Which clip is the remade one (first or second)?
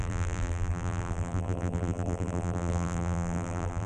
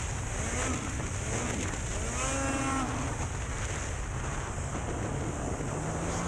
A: first